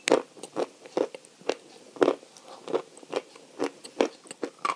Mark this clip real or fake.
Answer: real